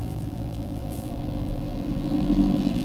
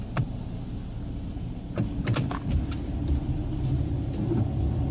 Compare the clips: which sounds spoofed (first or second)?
first